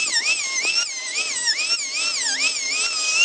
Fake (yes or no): no